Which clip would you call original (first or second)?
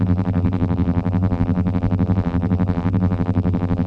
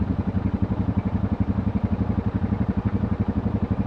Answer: second